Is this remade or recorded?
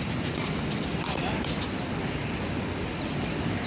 recorded